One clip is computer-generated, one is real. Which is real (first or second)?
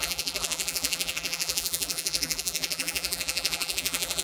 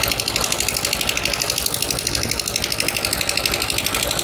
second